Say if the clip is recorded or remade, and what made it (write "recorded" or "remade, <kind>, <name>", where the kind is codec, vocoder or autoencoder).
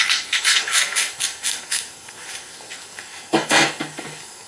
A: remade, codec, SNAC